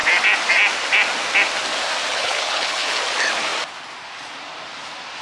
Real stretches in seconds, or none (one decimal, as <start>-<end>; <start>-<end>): 0.0-2.1; 3.0-5.2